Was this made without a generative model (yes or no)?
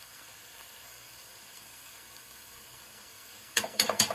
no